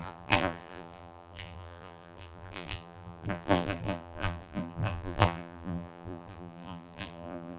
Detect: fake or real fake